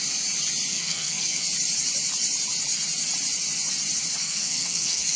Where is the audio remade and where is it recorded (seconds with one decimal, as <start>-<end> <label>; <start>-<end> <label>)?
0.0-0.7 recorded; 0.7-1.5 remade; 1.5-4.2 recorded; 4.2-5.2 remade